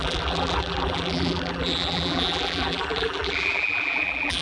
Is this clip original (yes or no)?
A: no